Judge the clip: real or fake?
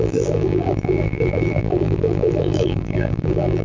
fake